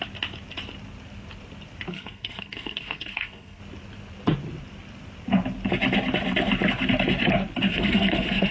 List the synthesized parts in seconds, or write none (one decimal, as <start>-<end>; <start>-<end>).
1.9-3.6; 7.7-8.5